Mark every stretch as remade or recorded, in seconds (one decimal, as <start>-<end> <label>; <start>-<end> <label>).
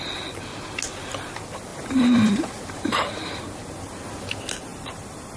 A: 0.0-1.7 recorded; 1.7-3.4 remade; 3.4-4.7 recorded; 4.7-5.4 remade